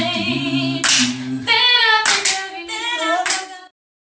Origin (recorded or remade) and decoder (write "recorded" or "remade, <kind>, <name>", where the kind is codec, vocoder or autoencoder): recorded